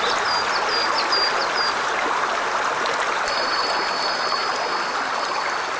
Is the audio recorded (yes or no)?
yes